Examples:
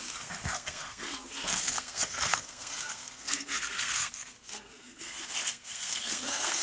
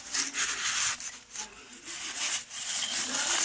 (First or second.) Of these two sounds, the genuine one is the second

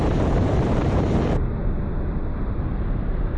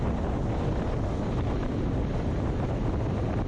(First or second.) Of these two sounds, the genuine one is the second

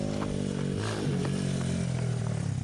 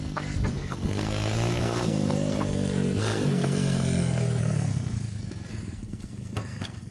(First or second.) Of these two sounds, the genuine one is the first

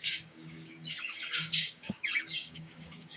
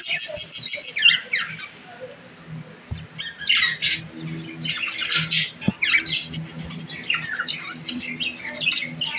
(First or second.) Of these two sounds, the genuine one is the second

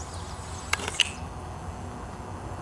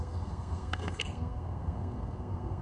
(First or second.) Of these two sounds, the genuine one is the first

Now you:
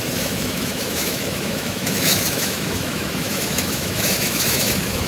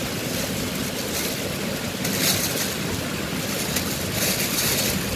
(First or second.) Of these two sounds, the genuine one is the second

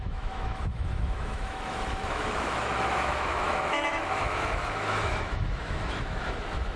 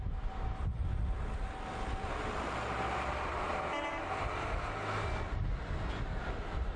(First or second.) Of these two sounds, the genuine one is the second